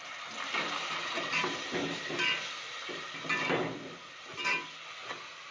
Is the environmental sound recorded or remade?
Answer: recorded